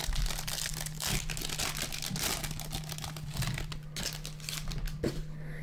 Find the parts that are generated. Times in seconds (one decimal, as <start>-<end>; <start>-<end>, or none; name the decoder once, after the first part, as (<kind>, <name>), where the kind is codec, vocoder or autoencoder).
none